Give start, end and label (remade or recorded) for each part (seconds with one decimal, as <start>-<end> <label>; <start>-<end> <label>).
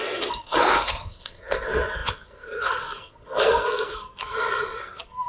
0.0-5.3 remade